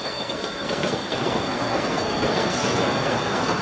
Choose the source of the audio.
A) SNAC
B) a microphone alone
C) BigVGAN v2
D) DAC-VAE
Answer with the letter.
A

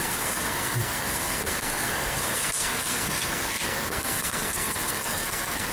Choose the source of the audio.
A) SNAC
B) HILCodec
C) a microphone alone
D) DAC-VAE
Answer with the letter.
A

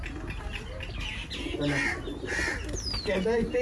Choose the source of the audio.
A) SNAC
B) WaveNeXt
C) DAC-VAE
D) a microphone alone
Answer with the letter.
D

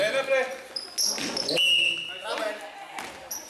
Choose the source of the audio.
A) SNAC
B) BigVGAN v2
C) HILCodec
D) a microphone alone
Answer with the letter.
D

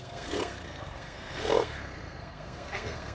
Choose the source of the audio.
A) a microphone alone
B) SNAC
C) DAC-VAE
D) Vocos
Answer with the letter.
B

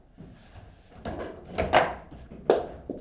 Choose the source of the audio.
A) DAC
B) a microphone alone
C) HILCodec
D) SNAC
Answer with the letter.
B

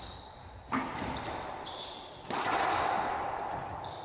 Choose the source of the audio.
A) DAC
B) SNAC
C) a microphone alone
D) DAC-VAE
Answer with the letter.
C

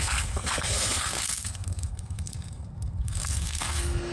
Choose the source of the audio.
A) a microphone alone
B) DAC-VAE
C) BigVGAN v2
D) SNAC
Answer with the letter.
D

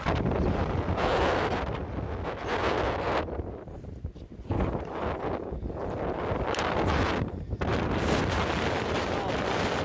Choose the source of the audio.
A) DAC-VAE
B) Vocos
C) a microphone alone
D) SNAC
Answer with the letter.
C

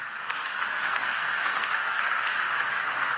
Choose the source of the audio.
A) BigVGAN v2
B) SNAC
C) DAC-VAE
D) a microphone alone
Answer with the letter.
B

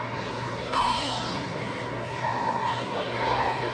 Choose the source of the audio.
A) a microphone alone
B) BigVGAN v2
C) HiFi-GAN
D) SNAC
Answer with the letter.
D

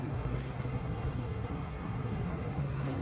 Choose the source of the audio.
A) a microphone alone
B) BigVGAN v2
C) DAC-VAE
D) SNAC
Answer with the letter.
D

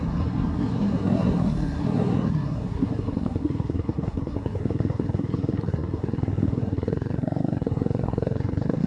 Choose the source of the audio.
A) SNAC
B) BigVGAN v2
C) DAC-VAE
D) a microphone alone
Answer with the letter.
A